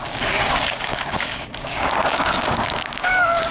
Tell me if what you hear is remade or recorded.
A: remade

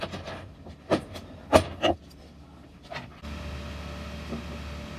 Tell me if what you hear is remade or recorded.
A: recorded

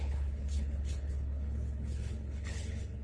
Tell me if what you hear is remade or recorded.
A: remade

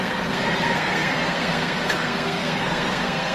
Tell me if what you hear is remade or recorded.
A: remade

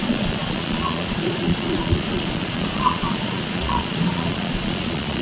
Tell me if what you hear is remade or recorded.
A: remade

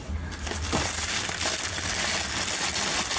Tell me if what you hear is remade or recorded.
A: recorded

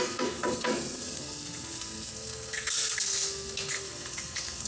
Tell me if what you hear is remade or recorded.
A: remade